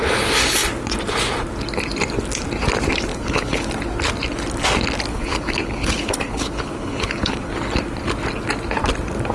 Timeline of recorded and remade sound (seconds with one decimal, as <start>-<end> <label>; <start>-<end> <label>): 0.0-3.1 recorded; 3.1-3.7 remade; 3.7-5.1 recorded; 5.1-7.5 remade; 7.5-9.3 recorded